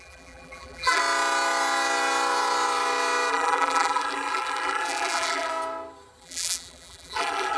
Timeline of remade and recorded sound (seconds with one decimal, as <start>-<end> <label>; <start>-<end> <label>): 0.0-1.0 remade; 1.0-3.3 recorded; 3.3-5.5 remade; 5.5-6.2 recorded; 6.2-7.6 remade